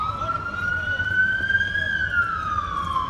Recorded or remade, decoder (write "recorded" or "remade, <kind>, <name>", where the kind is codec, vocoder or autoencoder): recorded